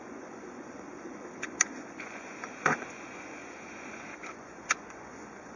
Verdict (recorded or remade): remade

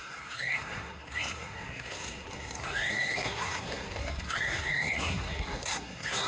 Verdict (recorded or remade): remade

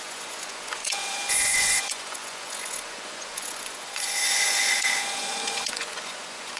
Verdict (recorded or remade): remade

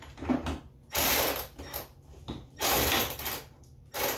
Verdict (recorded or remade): remade